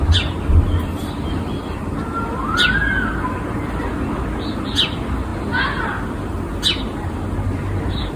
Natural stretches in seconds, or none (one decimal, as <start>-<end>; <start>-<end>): 0.0-8.2